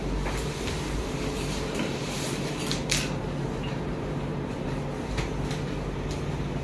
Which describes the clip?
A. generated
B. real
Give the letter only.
A